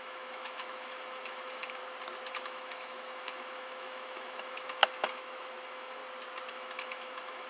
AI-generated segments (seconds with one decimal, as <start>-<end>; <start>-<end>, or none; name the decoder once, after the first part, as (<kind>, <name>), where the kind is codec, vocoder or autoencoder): 0.0-1.8 (autoencoder, DAC-VAE); 2.3-6.0; 6.5-7.5